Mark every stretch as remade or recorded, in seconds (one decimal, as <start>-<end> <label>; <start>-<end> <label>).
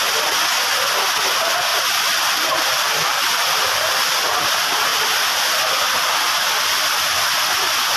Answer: 0.0-1.7 recorded; 1.7-3.2 remade; 3.2-4.9 recorded; 4.9-5.7 remade; 5.7-8.0 recorded